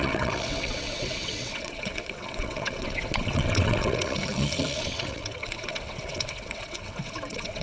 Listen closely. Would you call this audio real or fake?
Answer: fake